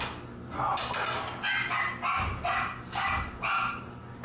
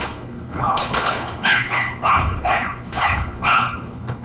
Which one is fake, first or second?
second